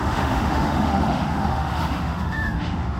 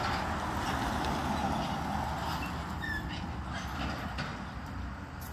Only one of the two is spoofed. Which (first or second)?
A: first